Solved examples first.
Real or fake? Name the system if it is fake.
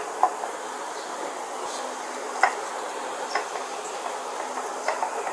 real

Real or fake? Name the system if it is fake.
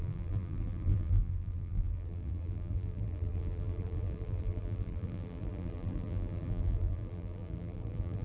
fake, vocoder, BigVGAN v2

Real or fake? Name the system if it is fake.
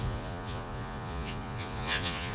fake, vocoder, Vocos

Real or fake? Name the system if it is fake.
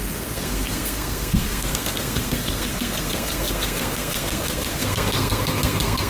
fake, codec, SNAC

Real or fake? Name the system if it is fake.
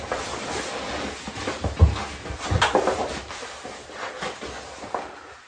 real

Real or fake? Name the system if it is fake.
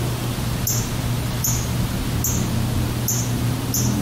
real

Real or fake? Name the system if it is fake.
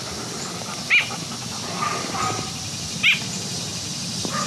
real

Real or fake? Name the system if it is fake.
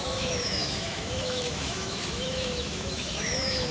fake, autoencoder, DAC-VAE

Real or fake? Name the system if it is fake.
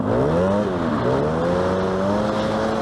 real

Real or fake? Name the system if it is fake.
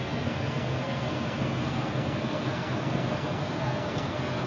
fake, codec, SNAC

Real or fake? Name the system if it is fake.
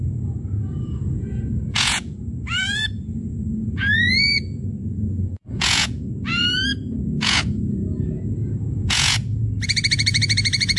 fake, vocoder, Vocos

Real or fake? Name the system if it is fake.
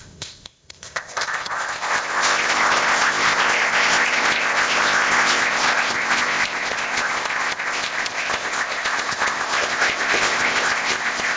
fake, codec, ZipCodec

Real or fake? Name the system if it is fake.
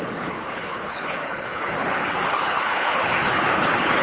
fake, codec, HILCodec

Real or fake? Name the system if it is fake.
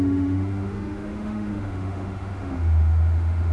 fake, autoencoder, DAC-VAE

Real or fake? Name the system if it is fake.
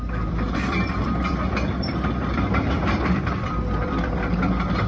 fake, vocoder, BigVGAN v2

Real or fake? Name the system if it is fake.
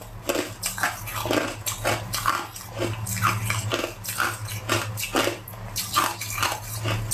real